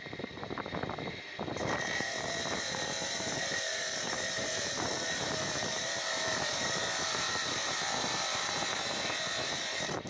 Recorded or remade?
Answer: remade